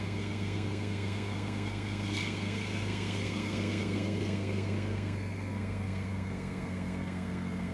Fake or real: fake